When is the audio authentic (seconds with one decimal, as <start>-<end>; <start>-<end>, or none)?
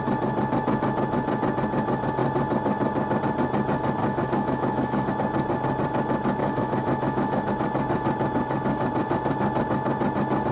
0.0-4.0; 5.1-6.4; 7.5-10.5